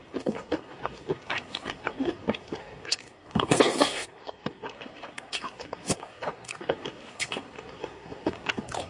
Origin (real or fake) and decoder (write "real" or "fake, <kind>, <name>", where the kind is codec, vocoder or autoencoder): fake, codec, SNAC